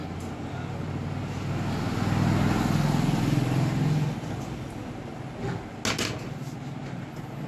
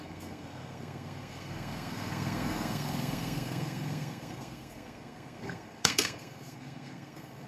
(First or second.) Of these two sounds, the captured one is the first